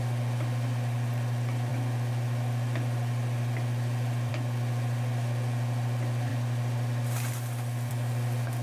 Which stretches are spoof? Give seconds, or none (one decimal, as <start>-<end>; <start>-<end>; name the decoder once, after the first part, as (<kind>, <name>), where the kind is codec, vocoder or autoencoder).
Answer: none